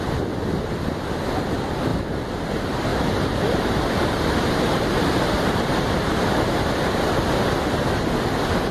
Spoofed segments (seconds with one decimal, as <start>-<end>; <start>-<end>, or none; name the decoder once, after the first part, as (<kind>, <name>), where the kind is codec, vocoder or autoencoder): 2.9-6.9 (vocoder, BigVGAN v2)